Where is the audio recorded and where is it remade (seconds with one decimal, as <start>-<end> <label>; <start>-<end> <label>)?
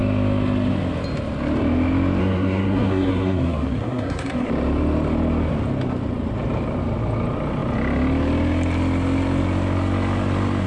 0.0-2.2 recorded; 2.2-4.5 remade; 4.5-10.7 recorded